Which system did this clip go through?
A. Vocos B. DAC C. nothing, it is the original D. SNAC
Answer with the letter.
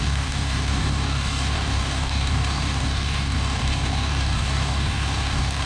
B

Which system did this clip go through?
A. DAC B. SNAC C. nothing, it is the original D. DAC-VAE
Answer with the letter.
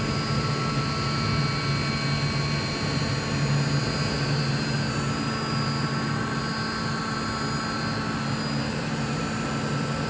C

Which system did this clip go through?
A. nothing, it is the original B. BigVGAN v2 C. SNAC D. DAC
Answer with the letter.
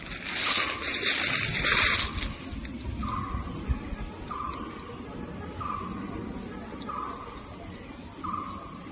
A